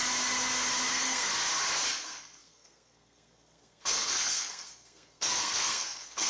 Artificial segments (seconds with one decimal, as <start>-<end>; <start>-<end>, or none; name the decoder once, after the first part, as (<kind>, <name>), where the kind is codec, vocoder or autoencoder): 0.9-1.3 (codec, SNAC); 1.9-6.3